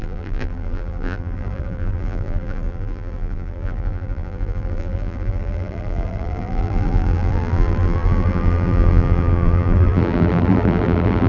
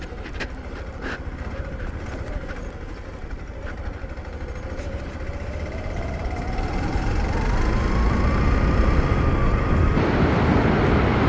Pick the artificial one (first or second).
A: first